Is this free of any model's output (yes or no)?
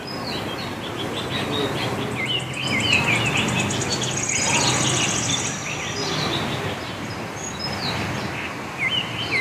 yes